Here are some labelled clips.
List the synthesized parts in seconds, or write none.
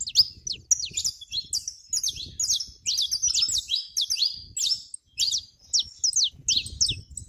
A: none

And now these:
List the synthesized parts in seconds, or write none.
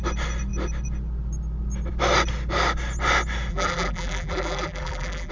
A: 3.5-5.3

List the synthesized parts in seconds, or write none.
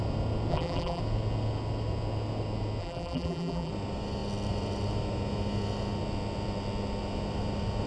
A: 0.5-1.0; 2.8-3.7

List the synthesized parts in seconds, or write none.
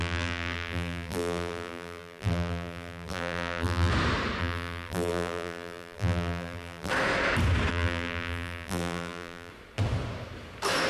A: 0.0-3.9; 4.4-6.9; 7.7-9.5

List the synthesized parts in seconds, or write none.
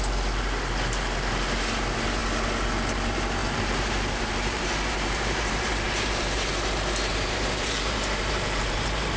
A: 3.4-6.5; 7.1-9.2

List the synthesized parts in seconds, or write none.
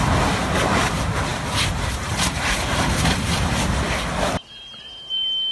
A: none